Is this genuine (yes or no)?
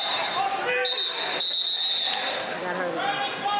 yes